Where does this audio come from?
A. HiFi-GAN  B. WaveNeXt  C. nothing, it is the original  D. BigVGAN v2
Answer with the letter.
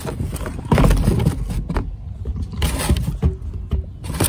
C